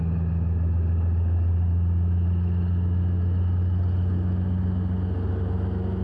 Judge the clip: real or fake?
real